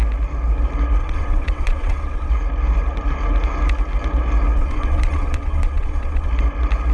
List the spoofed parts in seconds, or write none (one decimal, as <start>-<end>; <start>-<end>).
1.0-2.3; 4.6-6.3